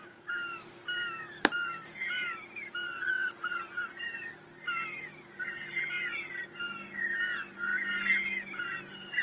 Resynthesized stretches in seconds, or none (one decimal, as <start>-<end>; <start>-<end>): none